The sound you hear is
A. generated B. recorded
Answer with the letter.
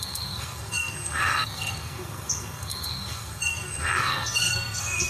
A